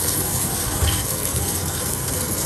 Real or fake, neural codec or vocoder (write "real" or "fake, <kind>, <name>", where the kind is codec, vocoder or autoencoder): fake, codec, SNAC